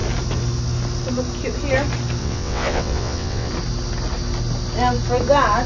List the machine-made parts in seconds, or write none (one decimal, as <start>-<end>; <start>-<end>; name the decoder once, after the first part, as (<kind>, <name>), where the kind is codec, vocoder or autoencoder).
2.2-3.5 (vocoder, WaveNeXt)